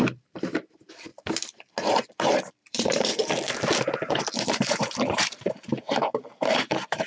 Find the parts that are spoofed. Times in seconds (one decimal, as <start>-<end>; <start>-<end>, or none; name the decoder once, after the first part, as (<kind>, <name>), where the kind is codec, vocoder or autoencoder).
0.0-1.1 (vocoder, BigVGAN v2); 2.5-3.1; 4.2-7.1